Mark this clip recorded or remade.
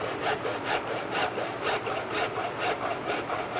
remade